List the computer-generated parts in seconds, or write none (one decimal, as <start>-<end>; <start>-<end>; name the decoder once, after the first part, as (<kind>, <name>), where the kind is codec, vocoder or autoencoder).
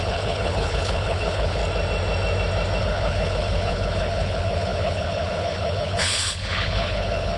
0.0-1.6 (codec, HILCodec); 2.8-7.4